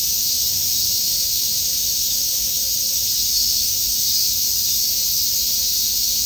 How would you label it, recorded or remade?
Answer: remade